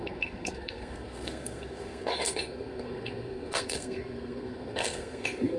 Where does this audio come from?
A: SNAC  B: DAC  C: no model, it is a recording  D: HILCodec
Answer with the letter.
A